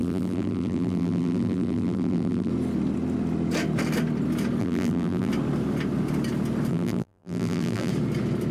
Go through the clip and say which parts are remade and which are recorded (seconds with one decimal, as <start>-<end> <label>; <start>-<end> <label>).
0.0-2.5 remade; 2.5-4.6 recorded; 4.6-5.3 remade; 5.3-6.7 recorded; 6.7-7.9 remade; 7.9-8.5 recorded